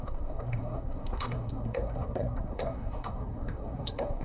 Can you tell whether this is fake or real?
fake